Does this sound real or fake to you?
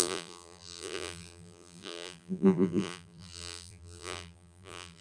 fake